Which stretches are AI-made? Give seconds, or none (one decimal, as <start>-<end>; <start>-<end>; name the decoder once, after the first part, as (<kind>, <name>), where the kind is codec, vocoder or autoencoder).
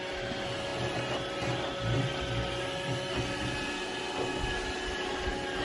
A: 0.0-0.7 (vocoder, BigVGAN v2); 2.3-5.6